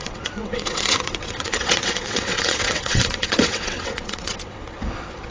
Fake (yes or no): yes